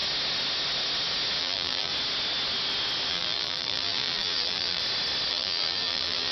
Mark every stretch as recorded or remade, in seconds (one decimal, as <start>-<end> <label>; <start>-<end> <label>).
0.0-1.4 recorded; 1.4-1.9 remade; 1.9-3.1 recorded; 3.1-4.8 remade; 4.8-5.3 recorded; 5.3-6.3 remade

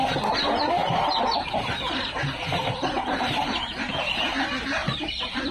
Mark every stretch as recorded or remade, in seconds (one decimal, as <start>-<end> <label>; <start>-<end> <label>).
0.0-0.8 recorded; 0.8-4.1 remade; 4.1-4.8 recorded; 4.8-5.5 remade

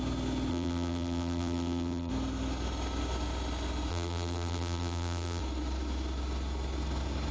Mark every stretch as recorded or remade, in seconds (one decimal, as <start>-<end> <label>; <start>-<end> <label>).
0.0-0.5 recorded; 0.5-2.1 remade; 2.1-3.9 recorded; 3.9-5.4 remade; 5.4-7.3 recorded

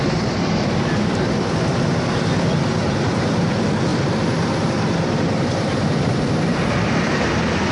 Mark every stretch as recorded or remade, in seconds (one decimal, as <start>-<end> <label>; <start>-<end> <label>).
0.0-3.9 remade; 3.9-5.4 recorded; 5.4-7.7 remade